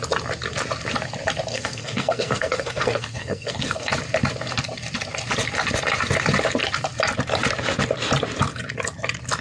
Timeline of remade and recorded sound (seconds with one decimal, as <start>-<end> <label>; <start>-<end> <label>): 0.0-1.5 recorded; 1.5-3.9 remade; 3.9-9.4 recorded